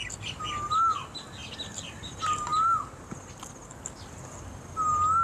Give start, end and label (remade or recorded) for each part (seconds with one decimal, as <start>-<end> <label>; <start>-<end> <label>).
0.0-5.2 recorded